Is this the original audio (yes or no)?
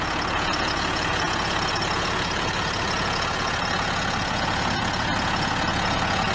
no